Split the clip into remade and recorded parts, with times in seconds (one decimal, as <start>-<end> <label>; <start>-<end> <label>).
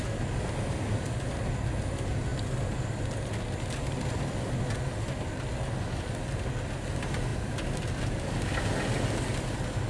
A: 0.0-9.9 recorded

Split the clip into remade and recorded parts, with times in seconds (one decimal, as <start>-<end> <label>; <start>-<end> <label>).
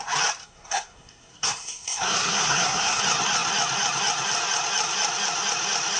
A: 0.0-0.4 recorded; 0.4-3.0 remade; 3.0-6.0 recorded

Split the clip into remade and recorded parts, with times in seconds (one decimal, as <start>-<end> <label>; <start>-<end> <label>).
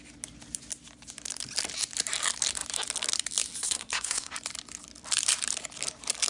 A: 0.0-3.6 recorded; 3.6-4.3 remade; 4.3-6.3 recorded